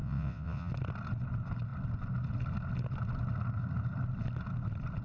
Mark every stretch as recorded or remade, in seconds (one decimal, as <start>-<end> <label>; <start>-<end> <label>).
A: 0.0-0.7 remade; 0.7-5.0 recorded